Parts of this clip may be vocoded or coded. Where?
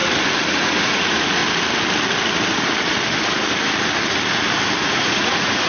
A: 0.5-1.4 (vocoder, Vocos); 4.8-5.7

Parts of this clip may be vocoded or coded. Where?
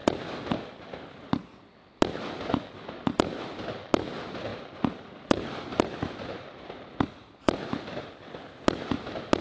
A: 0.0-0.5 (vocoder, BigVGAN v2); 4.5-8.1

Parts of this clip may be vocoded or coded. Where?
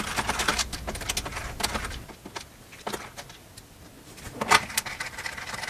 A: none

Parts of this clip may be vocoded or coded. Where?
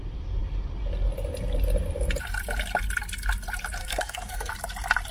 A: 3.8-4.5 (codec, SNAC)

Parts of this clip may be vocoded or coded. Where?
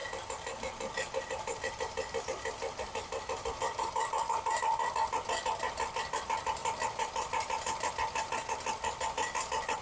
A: 6.6-7.9 (vocoder, BigVGAN v2)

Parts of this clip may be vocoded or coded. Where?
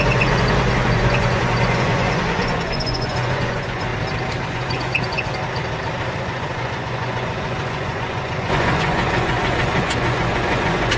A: 0.0-3.9 (vocoder, Vocos); 4.5-5.4; 6.2-11.0